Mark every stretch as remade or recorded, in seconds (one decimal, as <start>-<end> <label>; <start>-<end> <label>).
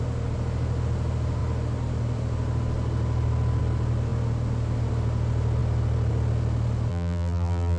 0.0-6.9 recorded; 6.9-7.8 remade